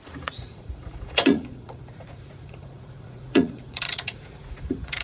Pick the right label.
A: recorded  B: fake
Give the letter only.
B